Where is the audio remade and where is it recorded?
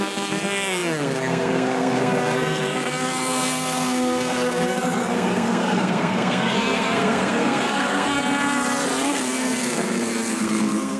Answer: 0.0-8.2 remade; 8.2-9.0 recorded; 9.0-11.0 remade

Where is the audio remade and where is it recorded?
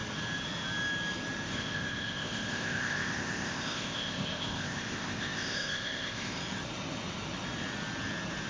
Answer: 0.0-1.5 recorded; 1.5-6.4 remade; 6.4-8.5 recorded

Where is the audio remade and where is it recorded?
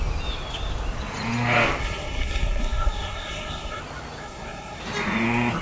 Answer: 0.0-1.8 recorded; 1.8-3.8 remade; 3.8-4.2 recorded; 4.2-4.8 remade; 4.8-5.6 recorded